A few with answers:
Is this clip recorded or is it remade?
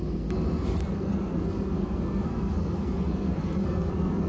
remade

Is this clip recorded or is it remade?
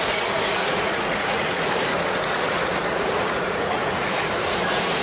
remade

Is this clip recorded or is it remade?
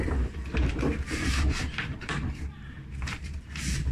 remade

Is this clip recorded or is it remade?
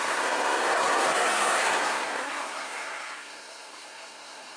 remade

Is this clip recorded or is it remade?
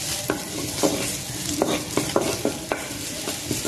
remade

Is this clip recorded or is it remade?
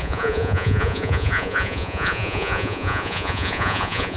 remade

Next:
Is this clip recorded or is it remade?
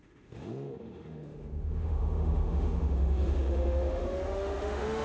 remade